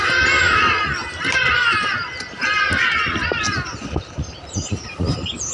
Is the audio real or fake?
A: real